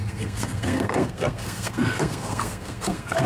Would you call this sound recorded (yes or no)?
no